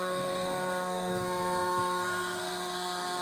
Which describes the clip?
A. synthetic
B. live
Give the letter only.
A